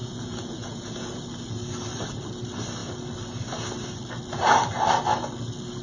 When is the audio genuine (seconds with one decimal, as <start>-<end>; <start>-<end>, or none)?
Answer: 1.2-5.8